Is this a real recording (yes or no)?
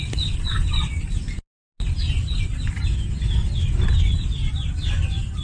yes